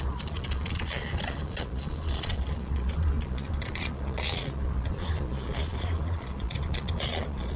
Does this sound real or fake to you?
fake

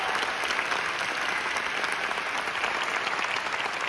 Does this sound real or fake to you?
real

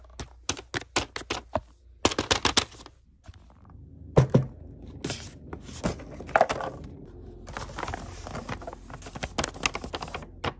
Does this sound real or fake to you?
real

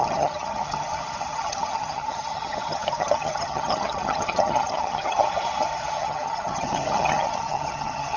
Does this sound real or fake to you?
fake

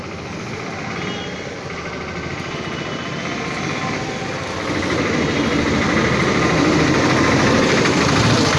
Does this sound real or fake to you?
real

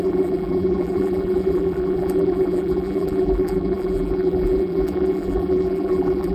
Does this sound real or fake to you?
fake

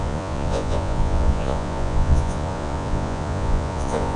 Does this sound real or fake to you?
fake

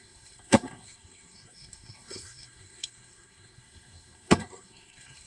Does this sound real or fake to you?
fake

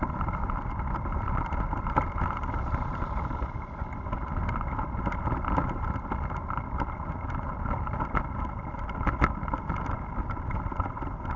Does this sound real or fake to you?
fake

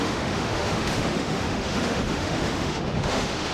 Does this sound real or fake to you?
fake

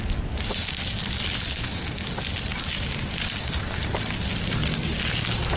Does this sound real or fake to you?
real